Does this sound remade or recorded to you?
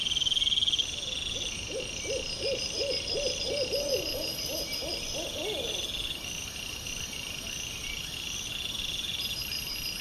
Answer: recorded